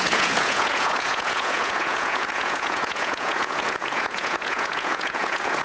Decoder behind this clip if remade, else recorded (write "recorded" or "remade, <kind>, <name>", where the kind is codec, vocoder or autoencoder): remade, vocoder, Vocos